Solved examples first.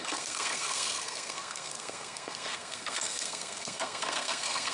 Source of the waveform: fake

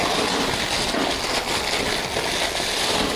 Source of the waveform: real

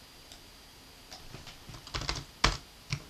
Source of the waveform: real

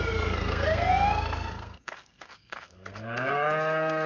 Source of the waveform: fake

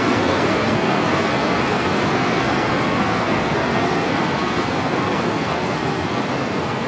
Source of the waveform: fake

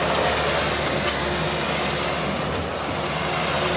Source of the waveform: real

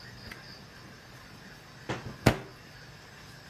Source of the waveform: real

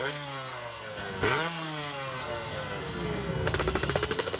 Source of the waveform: fake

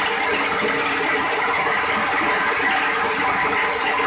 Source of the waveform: real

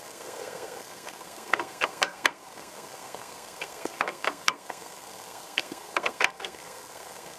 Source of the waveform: fake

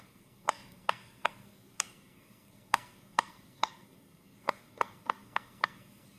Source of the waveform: fake